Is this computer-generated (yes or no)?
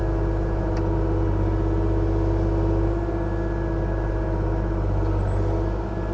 no